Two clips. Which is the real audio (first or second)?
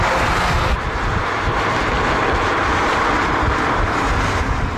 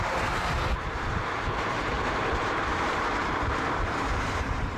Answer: first